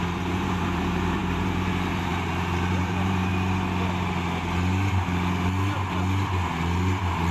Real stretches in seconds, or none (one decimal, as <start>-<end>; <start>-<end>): 3.3-7.3